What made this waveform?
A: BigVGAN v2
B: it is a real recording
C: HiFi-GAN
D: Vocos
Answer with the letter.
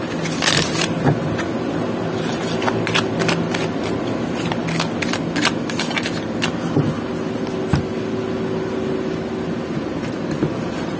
B